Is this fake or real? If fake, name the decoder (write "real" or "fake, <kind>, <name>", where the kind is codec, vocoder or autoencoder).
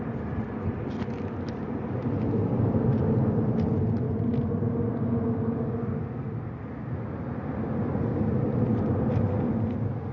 real